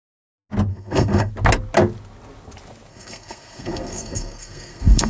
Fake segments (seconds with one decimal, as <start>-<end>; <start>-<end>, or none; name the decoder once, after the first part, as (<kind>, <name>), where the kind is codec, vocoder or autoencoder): 0.7-1.3 (codec, SNAC); 2.9-5.1